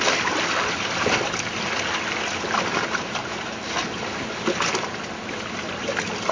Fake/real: real